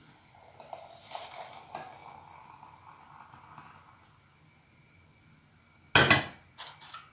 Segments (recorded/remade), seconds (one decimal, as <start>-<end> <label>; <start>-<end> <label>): 0.0-7.1 recorded